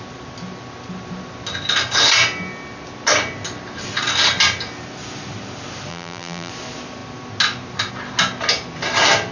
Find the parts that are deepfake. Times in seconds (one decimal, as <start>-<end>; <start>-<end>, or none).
5.9-6.5